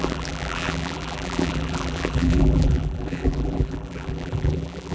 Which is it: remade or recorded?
remade